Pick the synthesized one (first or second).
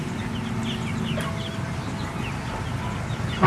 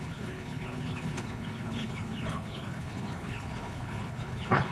second